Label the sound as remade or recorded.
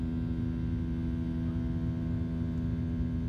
recorded